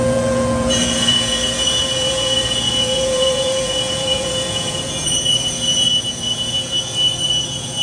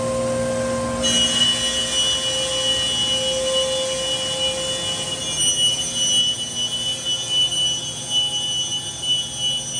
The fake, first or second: first